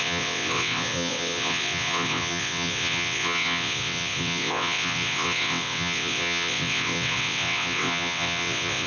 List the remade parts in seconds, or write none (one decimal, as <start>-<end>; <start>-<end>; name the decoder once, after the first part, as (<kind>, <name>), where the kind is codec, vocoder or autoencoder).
0.0-8.9 (vocoder, WaveNeXt)